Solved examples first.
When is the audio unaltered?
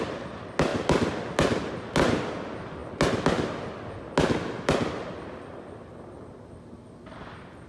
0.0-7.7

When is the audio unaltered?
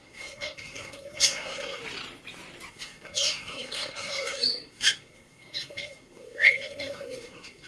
1.8-2.7